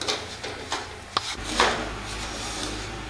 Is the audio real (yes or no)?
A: yes